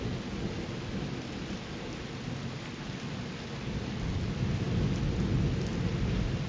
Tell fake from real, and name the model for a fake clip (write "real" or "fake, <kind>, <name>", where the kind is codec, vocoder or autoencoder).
real